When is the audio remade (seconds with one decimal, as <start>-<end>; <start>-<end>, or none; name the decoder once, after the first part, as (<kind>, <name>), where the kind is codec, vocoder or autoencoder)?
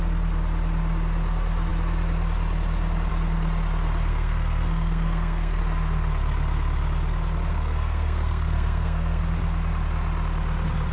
4.1-5.6 (codec, SNAC); 7.5-9.2